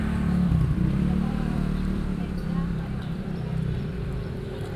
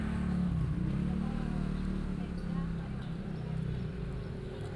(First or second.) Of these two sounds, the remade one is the first